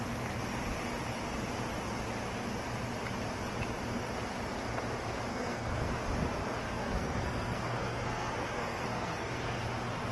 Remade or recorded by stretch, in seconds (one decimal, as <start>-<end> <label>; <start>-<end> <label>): 0.0-5.3 recorded; 5.3-5.9 remade; 5.9-6.8 recorded; 6.8-9.6 remade; 9.6-10.1 recorded

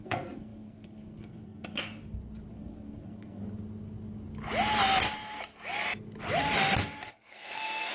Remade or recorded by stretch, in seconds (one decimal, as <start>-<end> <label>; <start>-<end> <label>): 0.0-2.0 remade; 2.0-2.5 recorded; 2.5-3.4 remade; 3.4-7.1 recorded; 7.1-7.9 remade